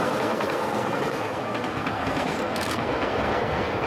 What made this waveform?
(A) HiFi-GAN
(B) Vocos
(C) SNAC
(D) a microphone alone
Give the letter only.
C